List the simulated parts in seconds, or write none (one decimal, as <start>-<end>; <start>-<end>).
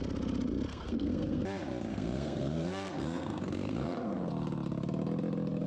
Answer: 0.7-1.4; 1.9-4.3